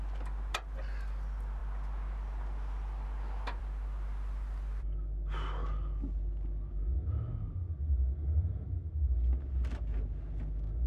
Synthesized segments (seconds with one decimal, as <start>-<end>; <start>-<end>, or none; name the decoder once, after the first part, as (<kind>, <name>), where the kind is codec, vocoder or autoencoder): none